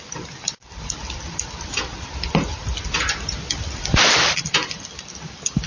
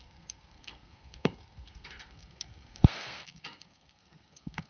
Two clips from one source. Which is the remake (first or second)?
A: second